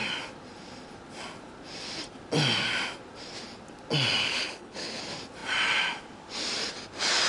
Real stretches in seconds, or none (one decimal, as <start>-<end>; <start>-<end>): 0.0-4.2; 5.0-7.3